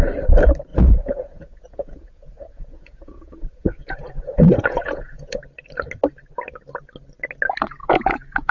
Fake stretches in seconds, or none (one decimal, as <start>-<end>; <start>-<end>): 0.7-5.4; 7.8-8.5